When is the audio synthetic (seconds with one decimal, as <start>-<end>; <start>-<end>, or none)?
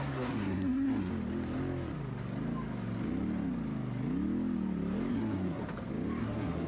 0.0-1.1; 5.1-5.6; 6.2-6.7